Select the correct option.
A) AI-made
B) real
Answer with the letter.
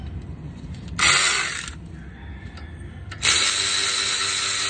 B